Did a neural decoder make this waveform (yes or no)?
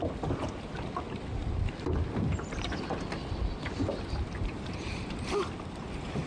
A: no